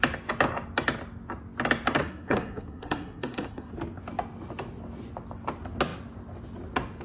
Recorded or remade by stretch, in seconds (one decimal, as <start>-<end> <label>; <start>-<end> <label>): 0.0-2.0 recorded; 2.0-3.7 remade; 3.7-7.0 recorded